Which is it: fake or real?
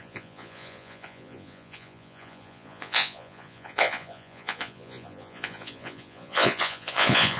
fake